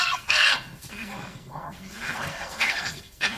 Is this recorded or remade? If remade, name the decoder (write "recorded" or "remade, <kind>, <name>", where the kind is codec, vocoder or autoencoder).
remade, codec, SNAC